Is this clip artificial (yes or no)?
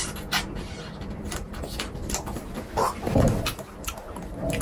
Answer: no